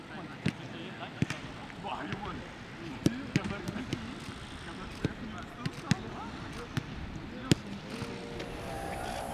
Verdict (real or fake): real